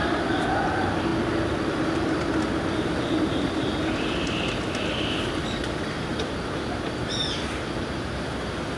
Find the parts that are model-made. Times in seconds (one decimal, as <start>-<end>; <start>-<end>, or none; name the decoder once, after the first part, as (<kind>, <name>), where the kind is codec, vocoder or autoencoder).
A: none